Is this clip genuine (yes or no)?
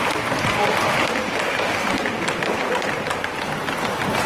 no